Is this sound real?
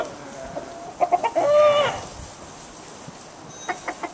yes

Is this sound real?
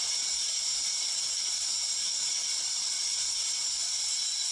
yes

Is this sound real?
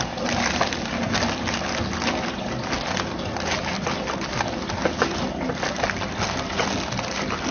yes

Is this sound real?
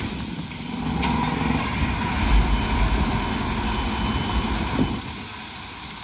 yes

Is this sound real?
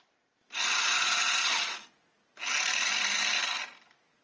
yes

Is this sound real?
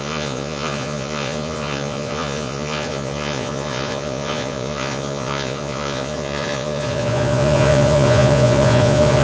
no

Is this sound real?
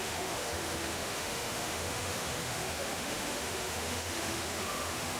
no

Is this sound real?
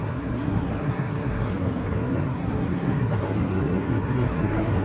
no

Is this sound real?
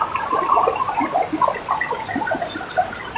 yes